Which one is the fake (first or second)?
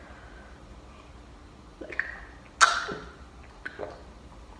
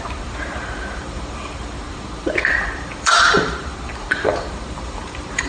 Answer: second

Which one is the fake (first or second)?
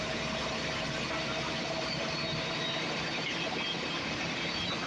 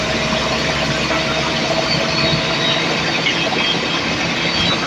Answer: first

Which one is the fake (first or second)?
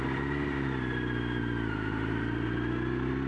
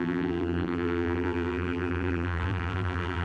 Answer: second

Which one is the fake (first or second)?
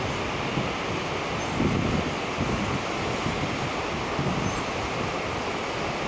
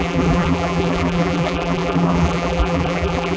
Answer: second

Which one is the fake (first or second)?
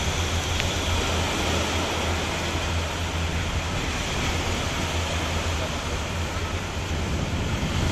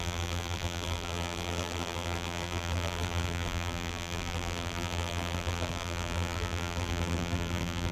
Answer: second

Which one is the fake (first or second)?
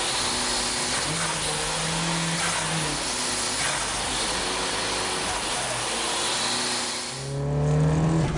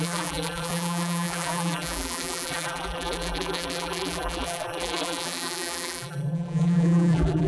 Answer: second